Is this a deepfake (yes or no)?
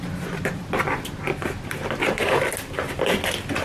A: no